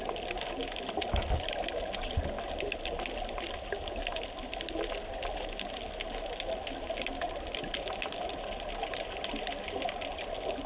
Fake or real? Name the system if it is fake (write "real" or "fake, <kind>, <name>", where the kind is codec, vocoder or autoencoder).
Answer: real